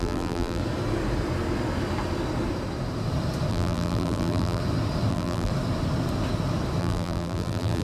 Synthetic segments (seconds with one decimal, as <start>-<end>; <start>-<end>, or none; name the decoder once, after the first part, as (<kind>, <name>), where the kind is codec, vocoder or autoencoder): 0.0-0.6 (vocoder, BigVGAN v2); 3.5-4.6; 5.1-5.5; 6.8-7.8